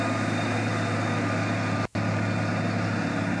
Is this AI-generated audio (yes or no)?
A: no